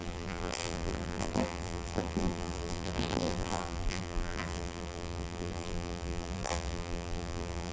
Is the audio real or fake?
fake